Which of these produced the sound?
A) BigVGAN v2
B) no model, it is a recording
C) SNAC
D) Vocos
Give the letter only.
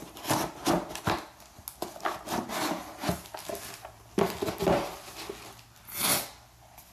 B